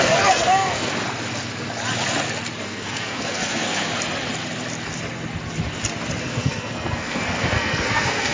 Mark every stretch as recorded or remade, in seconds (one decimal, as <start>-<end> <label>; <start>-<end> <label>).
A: 0.0-0.9 remade; 0.9-2.6 recorded; 2.6-3.9 remade; 3.9-6.2 recorded; 6.2-8.3 remade